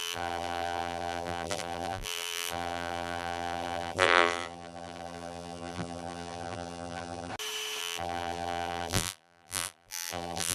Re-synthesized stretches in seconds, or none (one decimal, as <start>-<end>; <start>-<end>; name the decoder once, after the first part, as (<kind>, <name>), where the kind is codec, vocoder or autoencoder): 0.0-7.3 (vocoder, BigVGAN v2); 7.8-10.5